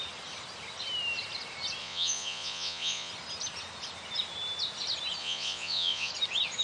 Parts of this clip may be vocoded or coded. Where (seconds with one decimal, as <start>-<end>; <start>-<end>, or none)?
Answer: 1.8-3.1; 5.2-6.1